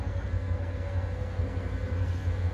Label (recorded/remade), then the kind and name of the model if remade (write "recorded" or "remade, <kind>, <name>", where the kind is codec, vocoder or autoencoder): remade, codec, SNAC